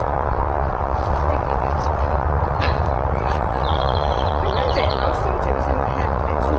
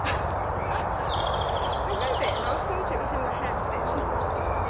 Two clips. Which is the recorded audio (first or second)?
second